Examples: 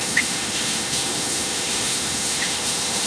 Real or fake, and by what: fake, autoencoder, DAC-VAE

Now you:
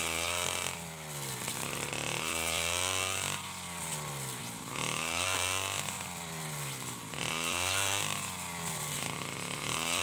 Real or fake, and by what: real